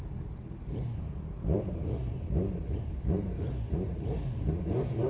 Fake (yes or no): yes